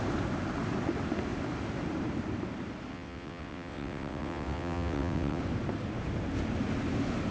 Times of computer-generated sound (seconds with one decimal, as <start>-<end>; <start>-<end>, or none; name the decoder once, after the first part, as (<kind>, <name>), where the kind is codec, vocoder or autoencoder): 2.9-5.4 (vocoder, WaveNeXt)